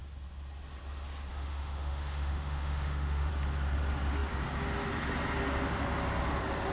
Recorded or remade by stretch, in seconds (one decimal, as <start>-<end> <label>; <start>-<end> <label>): 0.0-1.3 recorded; 1.3-3.3 remade; 3.3-6.7 recorded